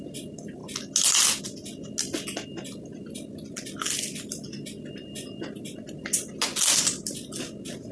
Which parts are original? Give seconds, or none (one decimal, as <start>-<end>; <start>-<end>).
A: 0.0-7.9